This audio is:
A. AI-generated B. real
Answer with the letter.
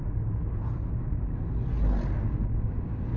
B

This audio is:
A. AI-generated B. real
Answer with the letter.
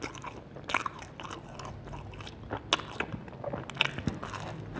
B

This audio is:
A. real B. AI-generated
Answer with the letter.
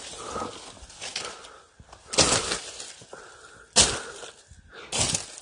A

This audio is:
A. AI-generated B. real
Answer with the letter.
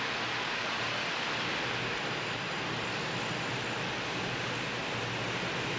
B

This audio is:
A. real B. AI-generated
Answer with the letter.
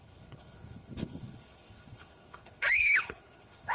B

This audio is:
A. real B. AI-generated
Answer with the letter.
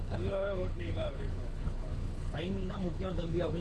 B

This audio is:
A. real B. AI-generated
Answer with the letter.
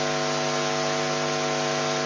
A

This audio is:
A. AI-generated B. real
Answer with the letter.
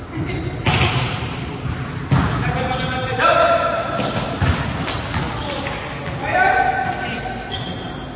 B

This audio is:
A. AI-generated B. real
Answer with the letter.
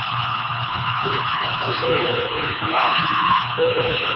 A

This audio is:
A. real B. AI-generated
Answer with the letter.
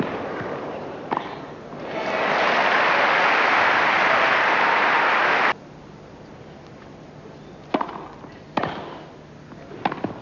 A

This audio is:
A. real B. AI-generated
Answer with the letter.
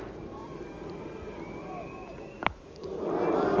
A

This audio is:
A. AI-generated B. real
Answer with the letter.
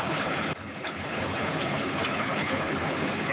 A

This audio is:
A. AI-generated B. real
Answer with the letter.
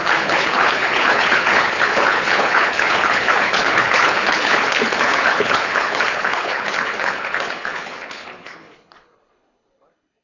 A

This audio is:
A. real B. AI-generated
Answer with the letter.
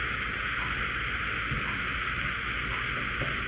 A